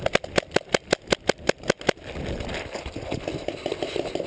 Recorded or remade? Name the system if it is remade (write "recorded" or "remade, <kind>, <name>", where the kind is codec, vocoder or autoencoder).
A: recorded